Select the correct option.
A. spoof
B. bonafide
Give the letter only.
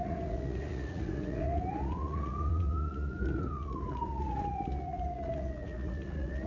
A